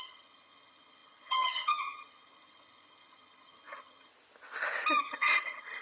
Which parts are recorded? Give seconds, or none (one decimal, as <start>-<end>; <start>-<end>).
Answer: 4.1-5.0